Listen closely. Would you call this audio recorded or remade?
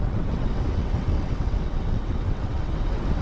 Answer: remade